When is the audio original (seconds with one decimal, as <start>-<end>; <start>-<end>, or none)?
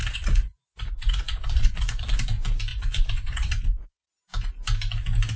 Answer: 2.0-2.7; 4.1-5.4